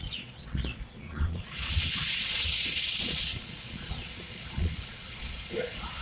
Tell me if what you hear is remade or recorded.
remade